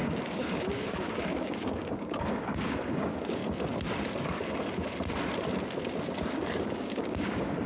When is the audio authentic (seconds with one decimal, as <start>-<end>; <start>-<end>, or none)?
3.4-6.3